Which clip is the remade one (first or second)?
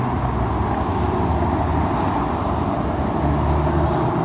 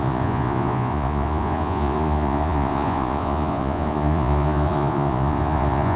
second